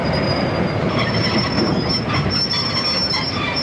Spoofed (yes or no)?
no